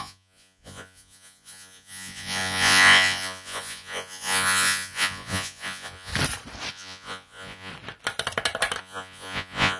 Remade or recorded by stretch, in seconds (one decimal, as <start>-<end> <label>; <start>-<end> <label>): 0.0-6.1 remade; 6.1-6.7 recorded; 6.7-7.7 remade; 7.7-8.8 recorded; 8.8-9.8 remade